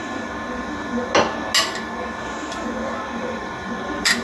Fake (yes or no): no